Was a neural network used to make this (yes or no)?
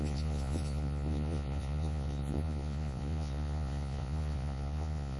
yes